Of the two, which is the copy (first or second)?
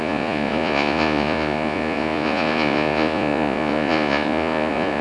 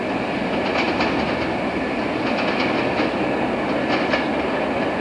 first